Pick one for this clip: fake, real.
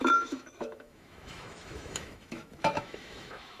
fake